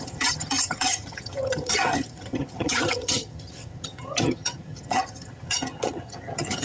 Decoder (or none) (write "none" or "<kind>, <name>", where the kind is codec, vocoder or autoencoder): vocoder, HiFi-GAN